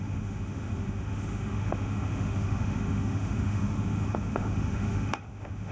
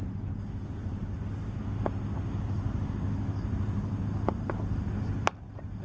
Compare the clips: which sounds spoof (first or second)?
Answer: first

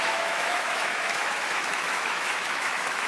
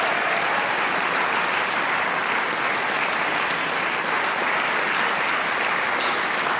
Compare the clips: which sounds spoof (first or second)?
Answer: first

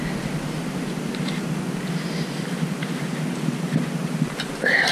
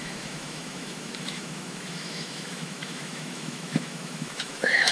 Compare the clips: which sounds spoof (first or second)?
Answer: second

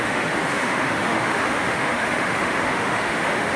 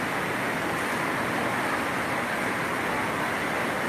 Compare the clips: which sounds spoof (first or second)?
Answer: first